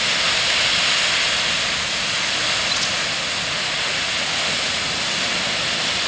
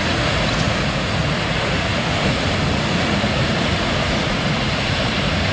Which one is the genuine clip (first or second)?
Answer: first